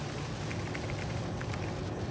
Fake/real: real